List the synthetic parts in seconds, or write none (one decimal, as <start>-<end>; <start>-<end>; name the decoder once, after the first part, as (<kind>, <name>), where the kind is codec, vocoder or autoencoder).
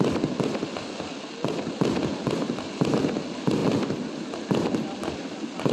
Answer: 0.6-1.5 (vocoder, BigVGAN v2)